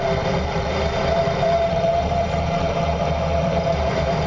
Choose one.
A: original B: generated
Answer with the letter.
B